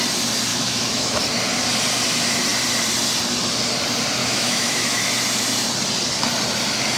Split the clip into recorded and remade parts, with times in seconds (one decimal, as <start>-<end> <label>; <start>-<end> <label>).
0.0-0.5 recorded; 0.5-1.2 remade; 1.2-4.2 recorded; 4.2-5.0 remade; 5.0-7.0 recorded